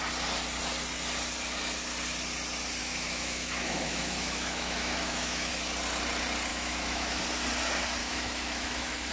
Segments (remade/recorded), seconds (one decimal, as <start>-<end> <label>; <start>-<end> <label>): 0.0-2.8 recorded; 2.8-5.5 remade; 5.5-6.5 recorded; 6.5-7.2 remade; 7.2-8.0 recorded; 8.0-9.1 remade